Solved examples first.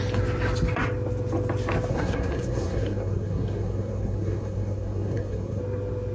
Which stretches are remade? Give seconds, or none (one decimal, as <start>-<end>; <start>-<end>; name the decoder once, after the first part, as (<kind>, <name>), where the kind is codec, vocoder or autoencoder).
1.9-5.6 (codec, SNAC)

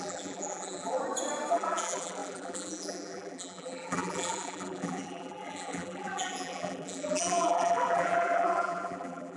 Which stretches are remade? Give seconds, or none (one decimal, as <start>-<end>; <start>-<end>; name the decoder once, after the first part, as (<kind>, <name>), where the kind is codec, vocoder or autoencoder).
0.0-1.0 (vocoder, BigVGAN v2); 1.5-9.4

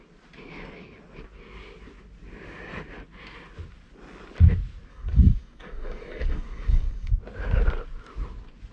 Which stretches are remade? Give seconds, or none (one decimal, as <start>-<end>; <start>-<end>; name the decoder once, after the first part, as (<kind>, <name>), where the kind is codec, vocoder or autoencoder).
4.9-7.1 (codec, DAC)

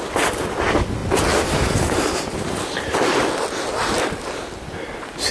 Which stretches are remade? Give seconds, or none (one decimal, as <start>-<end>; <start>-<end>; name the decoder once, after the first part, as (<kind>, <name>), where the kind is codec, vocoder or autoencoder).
none

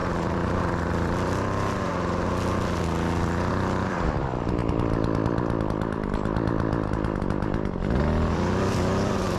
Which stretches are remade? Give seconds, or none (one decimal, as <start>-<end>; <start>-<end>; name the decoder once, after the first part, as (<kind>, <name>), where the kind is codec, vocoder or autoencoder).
0.0-1.9 (vocoder, BigVGAN v2); 3.5-9.4

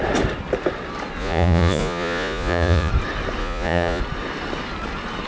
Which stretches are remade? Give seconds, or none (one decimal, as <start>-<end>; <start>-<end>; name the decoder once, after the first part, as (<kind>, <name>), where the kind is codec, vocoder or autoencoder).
1.2-2.9 (vocoder, Vocos); 3.4-4.0

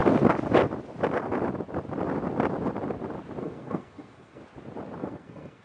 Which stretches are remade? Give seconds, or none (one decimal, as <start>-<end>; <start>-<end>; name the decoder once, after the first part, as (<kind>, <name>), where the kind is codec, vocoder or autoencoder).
3.4-4.4 (codec, SNAC); 5.0-5.6

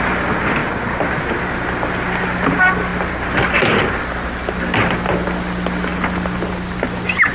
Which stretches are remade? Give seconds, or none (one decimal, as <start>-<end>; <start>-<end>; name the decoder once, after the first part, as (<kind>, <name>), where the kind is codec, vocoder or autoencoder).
none